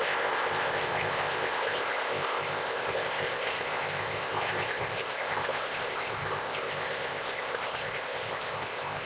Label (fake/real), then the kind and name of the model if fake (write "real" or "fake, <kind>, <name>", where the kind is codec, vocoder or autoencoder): fake, codec, ZipCodec